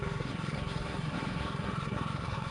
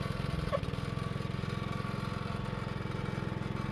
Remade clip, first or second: first